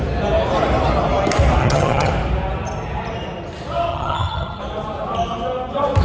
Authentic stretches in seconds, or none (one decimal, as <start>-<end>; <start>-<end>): 0.0-1.6; 2.1-3.9; 4.6-6.0

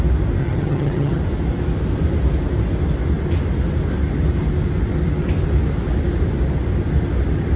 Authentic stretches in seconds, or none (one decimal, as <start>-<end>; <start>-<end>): 0.0-0.4; 1.2-7.6

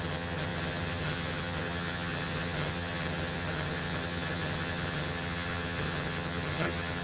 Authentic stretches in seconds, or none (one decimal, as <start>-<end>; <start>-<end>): none

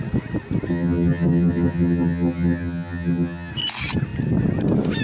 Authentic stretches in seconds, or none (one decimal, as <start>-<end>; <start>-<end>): 0.0-0.7; 3.5-5.0

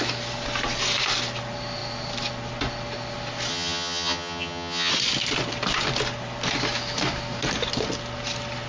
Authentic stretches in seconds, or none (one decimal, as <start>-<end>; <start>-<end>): 0.0-3.5; 4.9-8.7